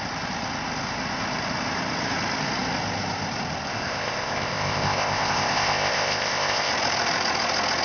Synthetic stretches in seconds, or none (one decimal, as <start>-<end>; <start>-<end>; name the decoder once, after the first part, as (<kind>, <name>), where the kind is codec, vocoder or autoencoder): 3.7-6.7 (codec, ZipCodec)

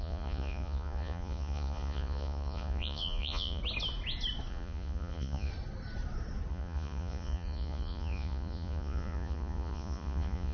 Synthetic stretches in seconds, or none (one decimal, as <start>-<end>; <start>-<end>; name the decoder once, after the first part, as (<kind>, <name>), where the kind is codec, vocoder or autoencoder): 0.0-3.6 (vocoder, Vocos); 4.5-5.5; 6.5-10.5

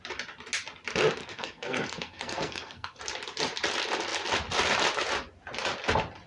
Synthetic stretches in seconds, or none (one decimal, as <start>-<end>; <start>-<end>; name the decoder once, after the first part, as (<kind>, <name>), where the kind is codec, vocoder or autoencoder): 1.2-3.0 (codec, SNAC)

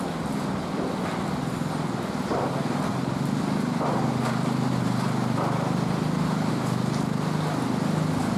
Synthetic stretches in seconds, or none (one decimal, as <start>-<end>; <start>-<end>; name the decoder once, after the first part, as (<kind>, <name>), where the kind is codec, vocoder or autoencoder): none

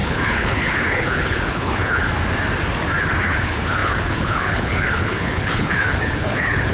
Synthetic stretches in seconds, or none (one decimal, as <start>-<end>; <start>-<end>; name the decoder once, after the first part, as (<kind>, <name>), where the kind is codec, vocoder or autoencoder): 0.0-2.0 (codec, HILCodec); 3.0-6.7